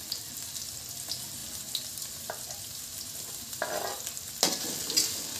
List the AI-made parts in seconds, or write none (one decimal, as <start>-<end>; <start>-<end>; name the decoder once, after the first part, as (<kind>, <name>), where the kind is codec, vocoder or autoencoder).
none